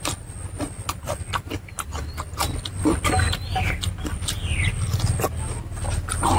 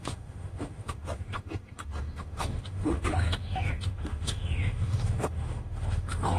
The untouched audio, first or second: first